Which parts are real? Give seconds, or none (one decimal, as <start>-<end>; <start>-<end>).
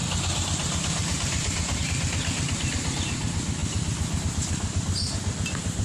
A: 1.8-5.8